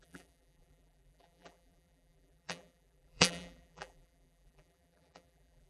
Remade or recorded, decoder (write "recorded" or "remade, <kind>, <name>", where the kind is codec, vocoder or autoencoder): remade, vocoder, BigVGAN v2